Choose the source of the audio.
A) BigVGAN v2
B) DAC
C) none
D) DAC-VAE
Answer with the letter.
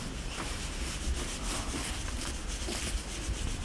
C